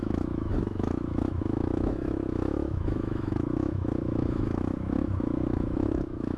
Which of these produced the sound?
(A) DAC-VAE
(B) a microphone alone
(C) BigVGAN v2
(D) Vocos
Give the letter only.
A